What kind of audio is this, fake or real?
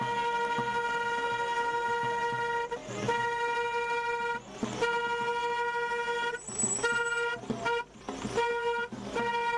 real